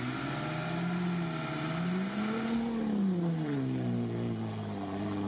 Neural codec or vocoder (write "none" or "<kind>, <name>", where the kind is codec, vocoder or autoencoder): none